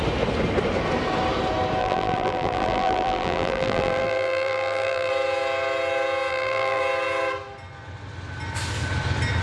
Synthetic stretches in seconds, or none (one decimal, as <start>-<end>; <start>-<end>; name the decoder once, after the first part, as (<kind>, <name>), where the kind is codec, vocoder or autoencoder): 1.8-5.1 (vocoder, BigVGAN v2); 6.3-6.8